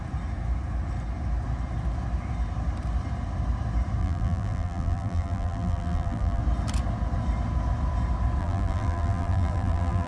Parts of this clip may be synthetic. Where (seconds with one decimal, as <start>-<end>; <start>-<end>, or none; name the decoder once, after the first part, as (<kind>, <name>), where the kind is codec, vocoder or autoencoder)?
4.0-6.4 (vocoder, BigVGAN v2); 8.4-10.1